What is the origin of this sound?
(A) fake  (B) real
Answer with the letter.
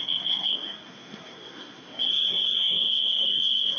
A